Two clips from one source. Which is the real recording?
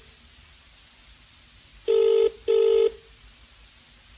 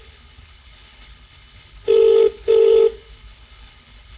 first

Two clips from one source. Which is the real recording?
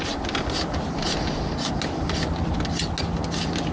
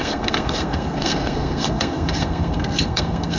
first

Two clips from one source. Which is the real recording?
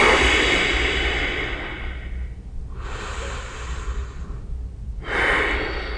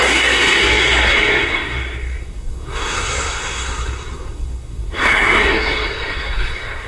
first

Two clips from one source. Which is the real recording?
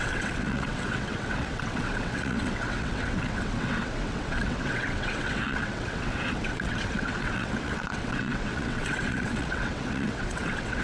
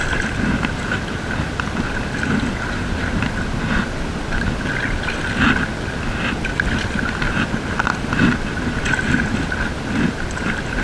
second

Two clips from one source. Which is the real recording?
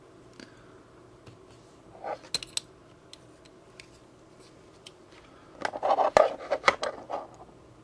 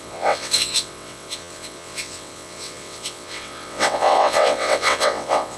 first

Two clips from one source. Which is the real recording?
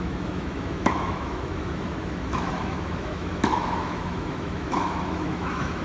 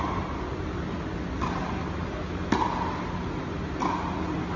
second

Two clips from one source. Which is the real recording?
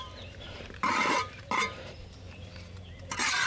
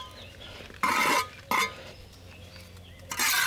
second